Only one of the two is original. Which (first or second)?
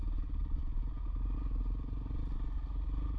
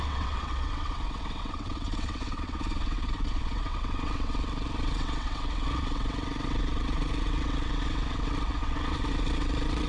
first